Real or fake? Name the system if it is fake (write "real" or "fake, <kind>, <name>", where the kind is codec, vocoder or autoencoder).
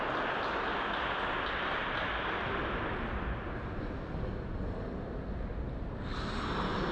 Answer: real